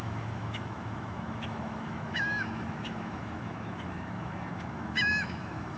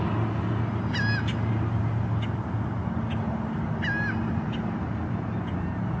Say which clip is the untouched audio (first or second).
second